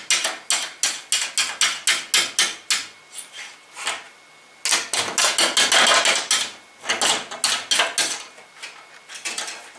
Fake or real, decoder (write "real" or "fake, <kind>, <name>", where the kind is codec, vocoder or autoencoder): real